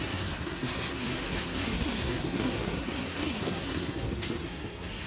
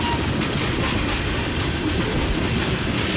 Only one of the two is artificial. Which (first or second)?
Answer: first